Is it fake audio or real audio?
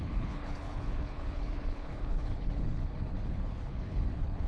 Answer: fake